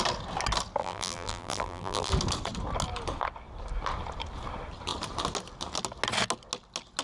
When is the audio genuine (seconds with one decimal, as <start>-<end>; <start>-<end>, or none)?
0.0-0.8; 2.1-7.0